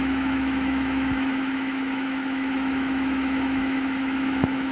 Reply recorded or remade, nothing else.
remade